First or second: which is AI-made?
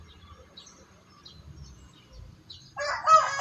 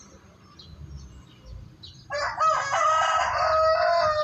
first